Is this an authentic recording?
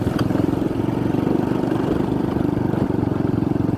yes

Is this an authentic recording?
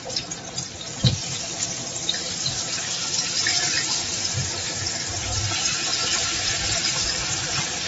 no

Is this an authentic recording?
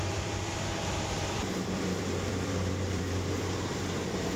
no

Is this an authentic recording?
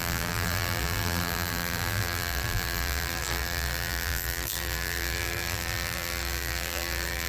no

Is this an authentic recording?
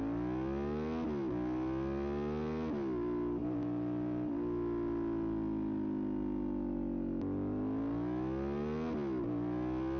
yes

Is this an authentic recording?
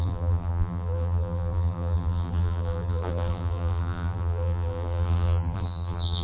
no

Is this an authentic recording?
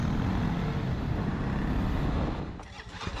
yes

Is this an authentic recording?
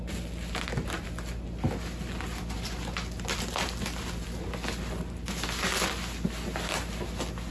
yes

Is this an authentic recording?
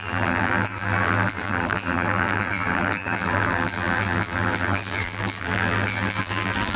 no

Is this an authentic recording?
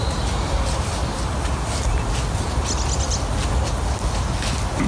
yes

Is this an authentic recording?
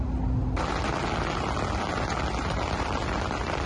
yes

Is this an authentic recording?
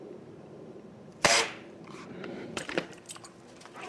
no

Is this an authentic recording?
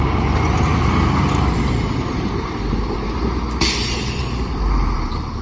no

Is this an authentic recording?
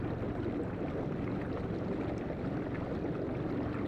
yes